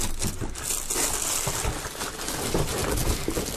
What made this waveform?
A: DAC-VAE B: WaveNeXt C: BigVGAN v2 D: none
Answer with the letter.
D